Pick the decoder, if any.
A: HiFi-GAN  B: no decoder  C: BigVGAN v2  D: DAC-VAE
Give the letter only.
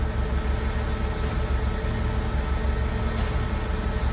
B